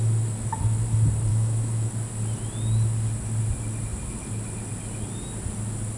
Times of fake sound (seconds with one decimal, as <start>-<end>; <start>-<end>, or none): 1.3-1.9